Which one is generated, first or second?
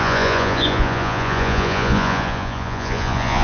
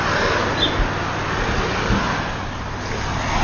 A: first